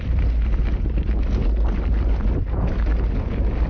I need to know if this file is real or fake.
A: real